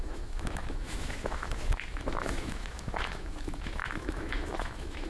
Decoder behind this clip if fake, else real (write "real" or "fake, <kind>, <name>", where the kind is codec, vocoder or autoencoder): fake, autoencoder, DAC-VAE